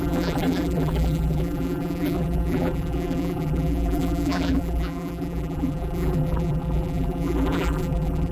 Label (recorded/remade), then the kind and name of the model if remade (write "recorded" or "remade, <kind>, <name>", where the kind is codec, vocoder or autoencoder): remade, vocoder, BigVGAN v2